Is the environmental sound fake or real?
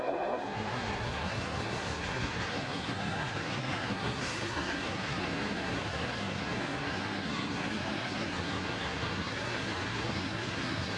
fake